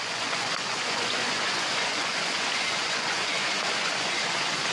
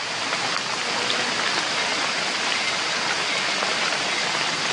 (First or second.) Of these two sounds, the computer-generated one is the first